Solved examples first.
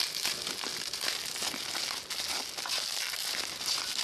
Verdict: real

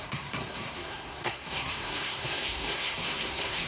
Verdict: fake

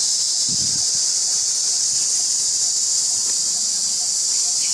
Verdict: real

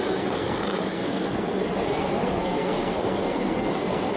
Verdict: fake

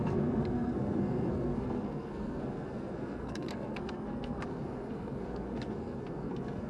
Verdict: fake